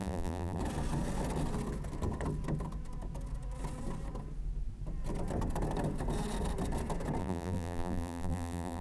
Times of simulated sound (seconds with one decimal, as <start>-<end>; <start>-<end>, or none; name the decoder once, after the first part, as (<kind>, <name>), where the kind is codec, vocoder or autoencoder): 0.0-0.6 (vocoder, BigVGAN v2); 7.2-8.8